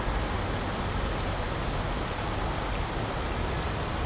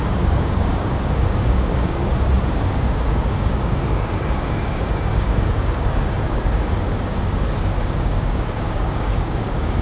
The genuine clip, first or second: first